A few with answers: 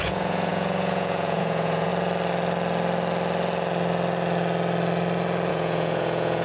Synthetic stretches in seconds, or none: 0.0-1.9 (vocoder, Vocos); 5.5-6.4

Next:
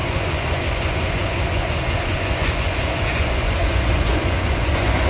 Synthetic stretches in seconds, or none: 0.0-5.1 (vocoder, Vocos)

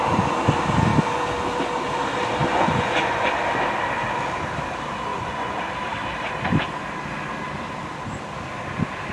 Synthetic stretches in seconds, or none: 2.5-3.3 (vocoder, Vocos); 5.1-5.7

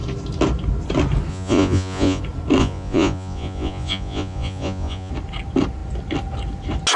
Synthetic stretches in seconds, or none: 1.3-2.2 (vocoder, Vocos); 2.6-5.1

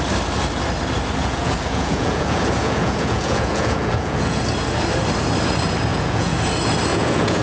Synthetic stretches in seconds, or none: 1.2-4.4 (vocoder, Vocos); 5.9-6.4; 6.9-7.4

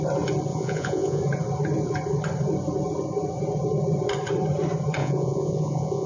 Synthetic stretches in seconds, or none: 0.5-1.2 (vocoder, Vocos); 5.0-6.1

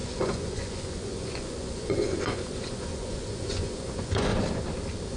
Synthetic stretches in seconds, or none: 0.0-4.3 (vocoder, Vocos)

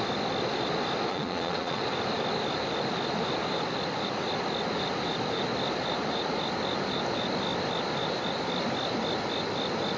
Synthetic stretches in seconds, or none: 1.1-1.8 (vocoder, Vocos)